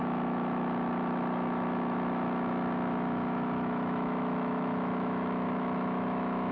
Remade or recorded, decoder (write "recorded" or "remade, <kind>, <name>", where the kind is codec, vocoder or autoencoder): remade, autoencoder, DAC-VAE